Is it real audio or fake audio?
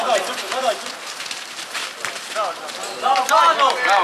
real